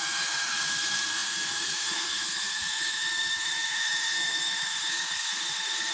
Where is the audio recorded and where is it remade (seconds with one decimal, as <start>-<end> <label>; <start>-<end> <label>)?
0.0-5.9 remade